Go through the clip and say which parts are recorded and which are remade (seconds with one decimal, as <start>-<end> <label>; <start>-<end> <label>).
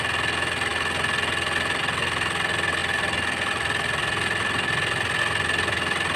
0.0-2.8 recorded; 2.8-5.2 remade; 5.2-6.2 recorded